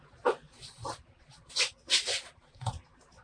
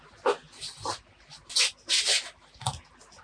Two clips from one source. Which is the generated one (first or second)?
first